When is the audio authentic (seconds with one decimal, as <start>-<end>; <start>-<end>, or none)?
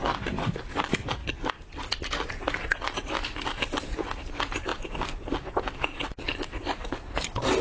0.0-7.6